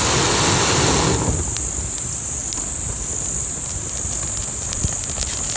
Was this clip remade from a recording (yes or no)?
no